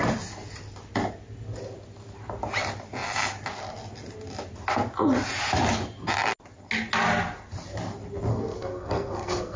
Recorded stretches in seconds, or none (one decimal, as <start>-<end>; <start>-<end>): 0.0-8.3